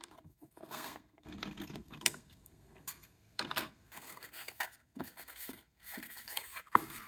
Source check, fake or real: fake